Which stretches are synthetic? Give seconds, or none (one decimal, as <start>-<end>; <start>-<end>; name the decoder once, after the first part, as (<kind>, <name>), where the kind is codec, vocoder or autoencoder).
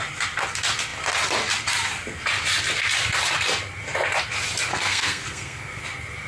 4.7-5.8 (codec, SNAC)